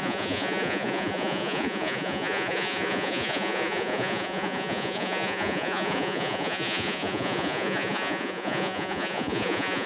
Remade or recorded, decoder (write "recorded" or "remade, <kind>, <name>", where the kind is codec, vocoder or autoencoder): remade, vocoder, Vocos